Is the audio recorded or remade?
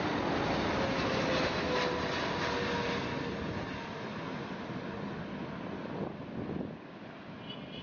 recorded